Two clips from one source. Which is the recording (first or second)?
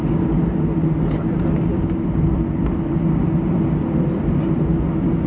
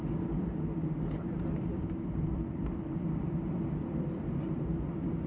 first